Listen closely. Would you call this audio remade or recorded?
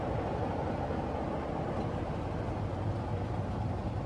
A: recorded